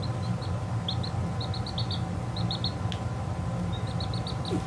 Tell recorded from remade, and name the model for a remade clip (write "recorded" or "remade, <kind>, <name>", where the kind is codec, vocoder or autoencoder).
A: recorded